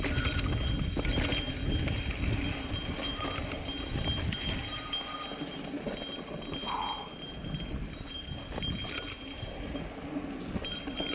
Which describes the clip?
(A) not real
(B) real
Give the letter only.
B